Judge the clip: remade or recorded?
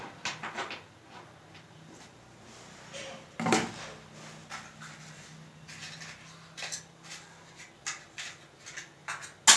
recorded